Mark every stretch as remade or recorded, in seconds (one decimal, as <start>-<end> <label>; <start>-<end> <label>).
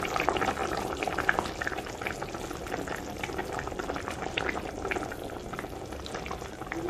0.0-6.9 recorded